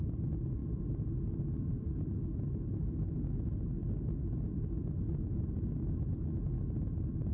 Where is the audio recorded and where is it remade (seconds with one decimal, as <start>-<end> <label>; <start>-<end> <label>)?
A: 0.0-7.3 recorded